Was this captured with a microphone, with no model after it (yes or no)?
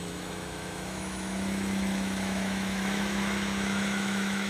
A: no